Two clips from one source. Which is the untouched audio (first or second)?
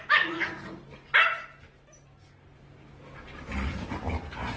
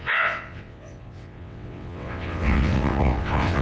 first